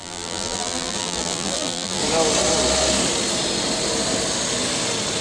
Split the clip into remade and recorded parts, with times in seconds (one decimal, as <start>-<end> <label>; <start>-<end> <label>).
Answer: 0.0-2.0 remade; 2.0-5.2 recorded